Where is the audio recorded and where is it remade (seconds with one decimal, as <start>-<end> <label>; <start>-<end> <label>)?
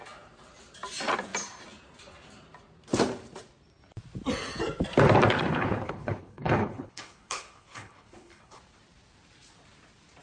0.0-5.5 recorded; 5.5-8.6 remade; 8.6-10.2 recorded